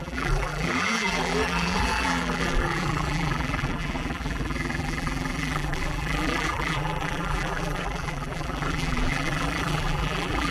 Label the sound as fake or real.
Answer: fake